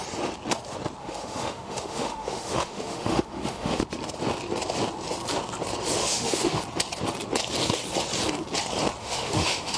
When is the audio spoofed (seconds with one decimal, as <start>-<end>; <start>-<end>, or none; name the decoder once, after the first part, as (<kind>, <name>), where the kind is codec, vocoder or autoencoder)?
1.0-3.8 (autoencoder, DAC-VAE); 6.0-6.6; 9.0-9.8